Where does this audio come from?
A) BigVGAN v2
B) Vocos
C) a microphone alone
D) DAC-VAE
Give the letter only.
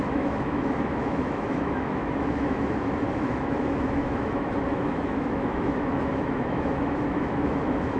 D